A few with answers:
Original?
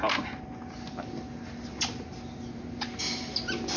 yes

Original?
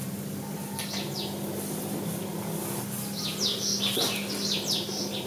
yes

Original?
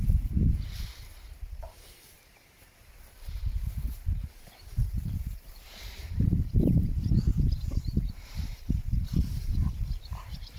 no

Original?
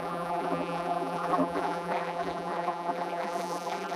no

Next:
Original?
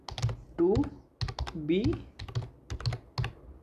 yes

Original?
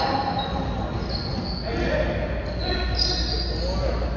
yes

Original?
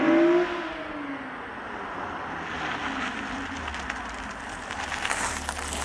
yes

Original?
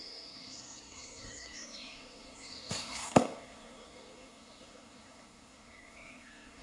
no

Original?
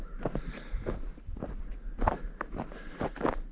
yes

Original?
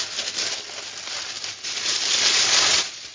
yes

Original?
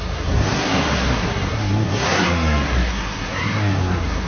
no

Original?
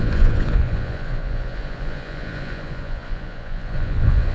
no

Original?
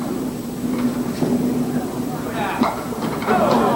yes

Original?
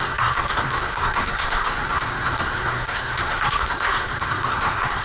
no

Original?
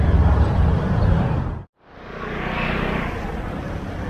no